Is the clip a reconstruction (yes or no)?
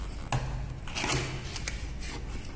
no